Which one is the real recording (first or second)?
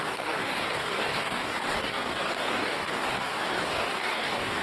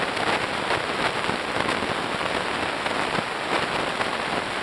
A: second